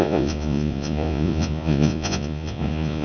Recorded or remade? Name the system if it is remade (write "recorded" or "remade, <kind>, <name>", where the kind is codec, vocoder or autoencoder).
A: remade, vocoder, Vocos